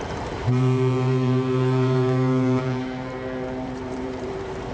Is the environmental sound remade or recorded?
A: remade